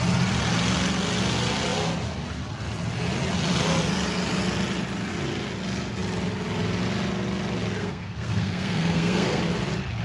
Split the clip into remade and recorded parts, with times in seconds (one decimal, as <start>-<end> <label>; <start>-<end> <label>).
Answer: 0.0-7.8 recorded; 7.8-9.4 remade; 9.4-10.0 recorded